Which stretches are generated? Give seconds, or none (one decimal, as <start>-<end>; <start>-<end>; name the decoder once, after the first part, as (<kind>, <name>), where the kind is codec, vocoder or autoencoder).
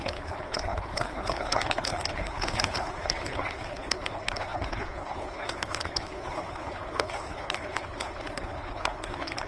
0.0-9.5 (codec, HILCodec)